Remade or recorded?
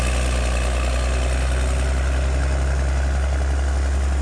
recorded